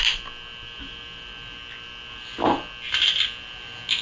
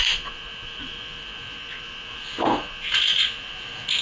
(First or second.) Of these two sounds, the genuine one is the first